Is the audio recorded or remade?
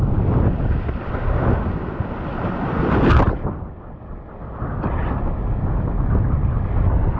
recorded